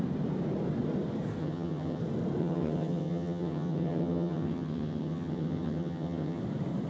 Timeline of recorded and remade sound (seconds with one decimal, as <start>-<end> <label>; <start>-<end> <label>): 0.0-1.4 recorded; 1.4-2.0 remade; 2.0-2.4 recorded; 2.4-6.4 remade; 6.4-6.9 recorded